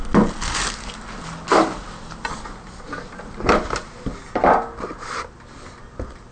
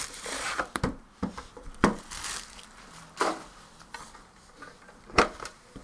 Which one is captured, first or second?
first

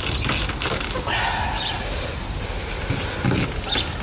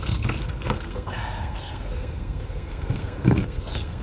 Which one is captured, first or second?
first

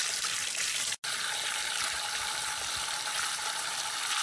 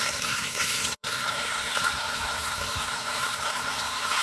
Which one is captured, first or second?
first